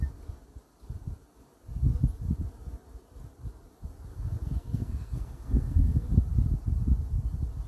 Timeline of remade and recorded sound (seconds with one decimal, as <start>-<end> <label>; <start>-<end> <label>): 0.0-4.1 recorded; 4.1-6.1 remade; 6.1-7.7 recorded